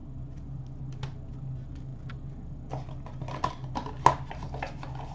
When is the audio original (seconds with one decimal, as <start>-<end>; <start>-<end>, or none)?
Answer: 0.0-5.1